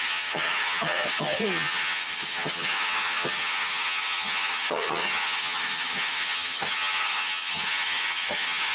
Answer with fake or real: fake